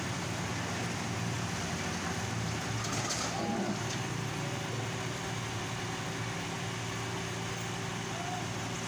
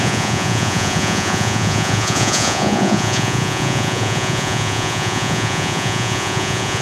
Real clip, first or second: first